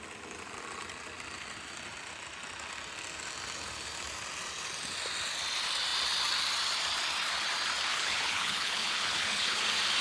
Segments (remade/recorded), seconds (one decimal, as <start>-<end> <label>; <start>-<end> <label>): 0.0-7.9 recorded; 7.9-9.6 remade; 9.6-10.0 recorded